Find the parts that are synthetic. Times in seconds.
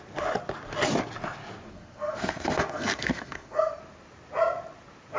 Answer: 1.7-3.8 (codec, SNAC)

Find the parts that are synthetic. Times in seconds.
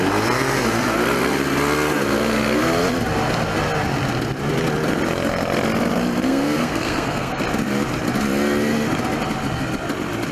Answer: 6.3-7.4 (codec, SNAC)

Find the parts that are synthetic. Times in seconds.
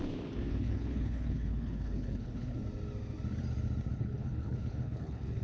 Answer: 0.5-2.6 (codec, HILCodec); 3.9-5.4